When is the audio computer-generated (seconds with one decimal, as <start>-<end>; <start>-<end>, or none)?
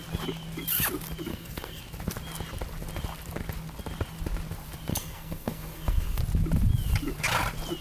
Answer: 1.3-1.8; 4.9-6.2